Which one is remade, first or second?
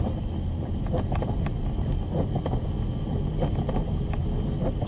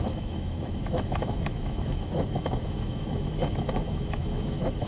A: second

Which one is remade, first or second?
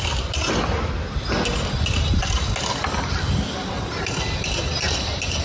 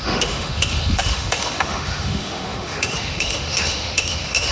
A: second